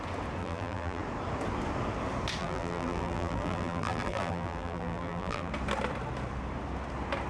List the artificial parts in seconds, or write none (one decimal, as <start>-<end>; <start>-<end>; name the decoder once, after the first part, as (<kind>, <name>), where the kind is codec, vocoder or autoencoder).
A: 0.4-1.0 (vocoder, BigVGAN v2); 2.4-5.5